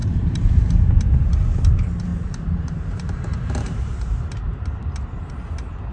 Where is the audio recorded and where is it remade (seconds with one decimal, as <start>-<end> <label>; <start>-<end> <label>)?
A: 0.0-1.3 remade; 1.3-2.1 recorded; 2.1-5.3 remade; 5.3-5.9 recorded